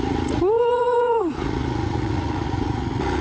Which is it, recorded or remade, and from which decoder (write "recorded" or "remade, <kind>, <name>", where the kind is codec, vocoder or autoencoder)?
remade, vocoder, Vocos